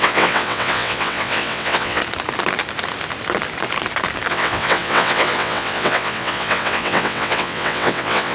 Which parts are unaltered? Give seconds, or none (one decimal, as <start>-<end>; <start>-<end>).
2.0-4.3